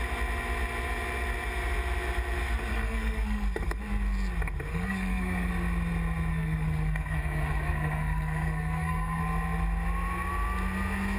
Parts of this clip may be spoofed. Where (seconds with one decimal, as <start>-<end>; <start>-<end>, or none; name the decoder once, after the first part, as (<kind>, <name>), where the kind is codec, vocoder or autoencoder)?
2.7-3.8 (codec, SNAC); 4.7-5.5; 6.3-9.2